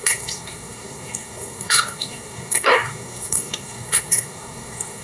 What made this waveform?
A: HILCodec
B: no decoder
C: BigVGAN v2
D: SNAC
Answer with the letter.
D